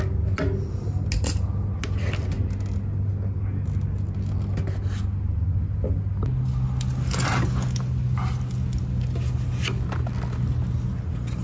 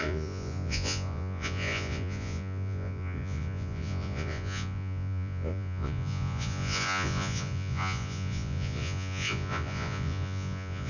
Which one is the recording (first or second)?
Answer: first